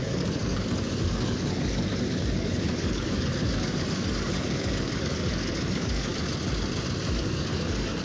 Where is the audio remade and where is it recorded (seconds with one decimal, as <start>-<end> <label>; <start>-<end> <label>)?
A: 0.0-6.1 remade; 6.1-7.2 recorded; 7.2-8.0 remade